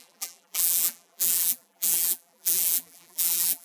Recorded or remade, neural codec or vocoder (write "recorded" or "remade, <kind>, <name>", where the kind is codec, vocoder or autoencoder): remade, vocoder, BigVGAN v2